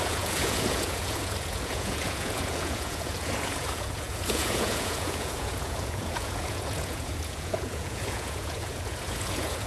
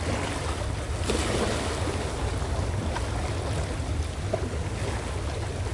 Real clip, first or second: second